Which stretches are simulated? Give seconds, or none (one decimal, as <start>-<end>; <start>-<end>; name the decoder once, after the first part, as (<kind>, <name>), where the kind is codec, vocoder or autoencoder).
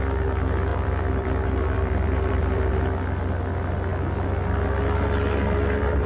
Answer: 0.7-2.7 (vocoder, BigVGAN v2)